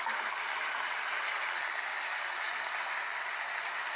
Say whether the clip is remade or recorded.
recorded